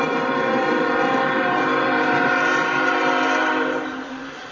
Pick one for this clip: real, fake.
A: fake